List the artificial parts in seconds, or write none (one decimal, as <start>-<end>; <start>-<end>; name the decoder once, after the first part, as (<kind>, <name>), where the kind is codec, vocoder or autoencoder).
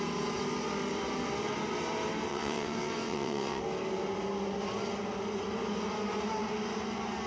2.3-3.6 (vocoder, WaveNeXt)